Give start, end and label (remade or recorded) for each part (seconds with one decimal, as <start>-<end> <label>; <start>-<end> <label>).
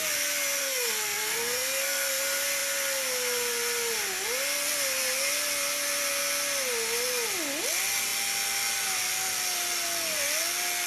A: 0.0-0.6 recorded; 0.6-2.2 remade; 2.2-10.9 recorded